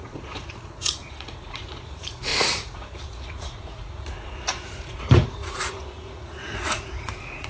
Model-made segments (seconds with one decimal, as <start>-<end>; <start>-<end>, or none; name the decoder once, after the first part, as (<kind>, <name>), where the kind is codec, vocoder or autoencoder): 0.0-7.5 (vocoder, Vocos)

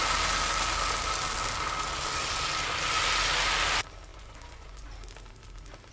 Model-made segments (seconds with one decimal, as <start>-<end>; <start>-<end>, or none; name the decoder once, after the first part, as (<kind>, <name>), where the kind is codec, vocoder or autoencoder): 4.1-4.9 (vocoder, Vocos)

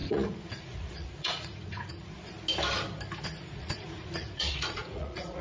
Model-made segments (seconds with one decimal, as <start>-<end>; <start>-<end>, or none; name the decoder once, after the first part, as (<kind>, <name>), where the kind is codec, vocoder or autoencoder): 0.0-2.3 (vocoder, Vocos); 3.4-5.4

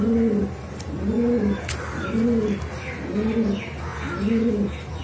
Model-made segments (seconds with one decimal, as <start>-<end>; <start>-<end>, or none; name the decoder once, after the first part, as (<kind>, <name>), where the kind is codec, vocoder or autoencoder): none